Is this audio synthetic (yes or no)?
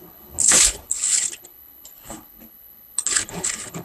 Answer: yes